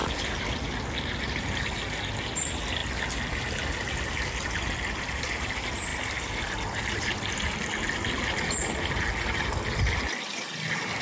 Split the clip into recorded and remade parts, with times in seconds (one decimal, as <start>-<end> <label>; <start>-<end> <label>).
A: 0.0-11.0 recorded